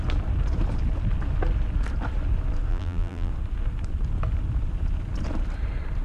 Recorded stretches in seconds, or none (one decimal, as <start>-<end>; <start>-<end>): 0.0-2.7; 3.3-6.0